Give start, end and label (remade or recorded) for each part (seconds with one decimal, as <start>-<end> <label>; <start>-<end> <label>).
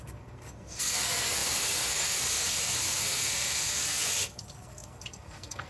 0.0-5.7 remade